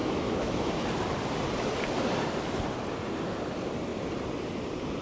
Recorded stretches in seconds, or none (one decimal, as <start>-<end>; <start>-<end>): 0.7-5.0

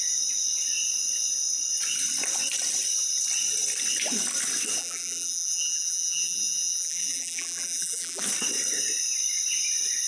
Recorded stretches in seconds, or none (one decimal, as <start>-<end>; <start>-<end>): 0.0-4.8; 8.2-10.1

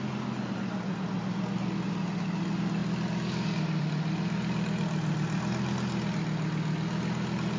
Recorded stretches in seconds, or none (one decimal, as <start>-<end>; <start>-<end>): 0.0-7.6